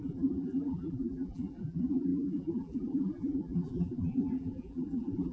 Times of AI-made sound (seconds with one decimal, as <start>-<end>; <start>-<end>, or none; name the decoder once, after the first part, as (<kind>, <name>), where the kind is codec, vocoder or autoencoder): 0.0-5.3 (vocoder, BigVGAN v2)